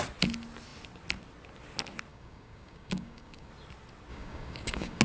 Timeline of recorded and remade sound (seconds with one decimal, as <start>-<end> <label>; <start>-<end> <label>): 0.0-2.1 recorded; 2.1-3.5 remade; 3.5-4.1 recorded; 4.1-5.0 remade